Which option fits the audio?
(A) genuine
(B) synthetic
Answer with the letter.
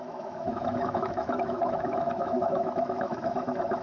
B